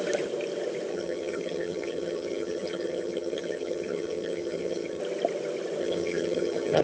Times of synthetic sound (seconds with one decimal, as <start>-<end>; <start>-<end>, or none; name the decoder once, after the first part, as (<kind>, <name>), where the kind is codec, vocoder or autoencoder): 0.9-5.0 (vocoder, HiFi-GAN); 5.8-6.8